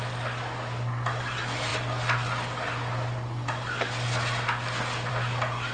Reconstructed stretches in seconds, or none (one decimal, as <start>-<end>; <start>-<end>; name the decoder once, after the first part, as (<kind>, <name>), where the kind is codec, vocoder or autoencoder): none